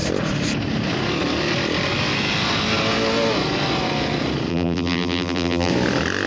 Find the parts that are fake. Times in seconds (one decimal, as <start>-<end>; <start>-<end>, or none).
4.5-5.7

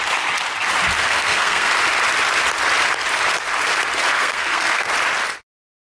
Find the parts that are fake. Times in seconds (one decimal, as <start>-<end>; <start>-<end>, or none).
1.0-1.7; 4.1-4.9

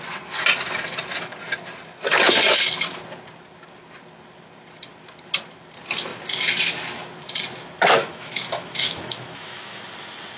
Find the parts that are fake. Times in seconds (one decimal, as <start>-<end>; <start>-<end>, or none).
8.1-9.8

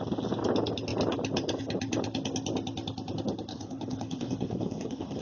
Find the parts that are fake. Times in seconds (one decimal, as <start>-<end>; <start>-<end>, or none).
3.5-5.2

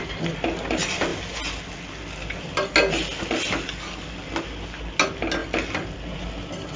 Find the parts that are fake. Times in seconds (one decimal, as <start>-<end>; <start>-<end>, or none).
none

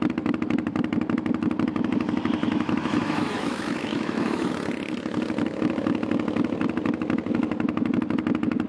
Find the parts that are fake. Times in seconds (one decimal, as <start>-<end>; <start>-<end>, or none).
2.4-4.5

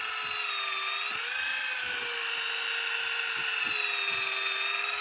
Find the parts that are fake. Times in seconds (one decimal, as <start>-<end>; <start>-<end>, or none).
none

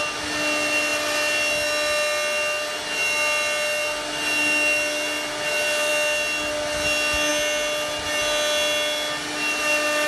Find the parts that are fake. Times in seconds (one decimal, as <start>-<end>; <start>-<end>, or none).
none